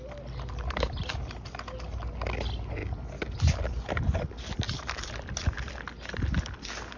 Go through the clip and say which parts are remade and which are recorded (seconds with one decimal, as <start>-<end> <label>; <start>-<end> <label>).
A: 0.0-7.0 recorded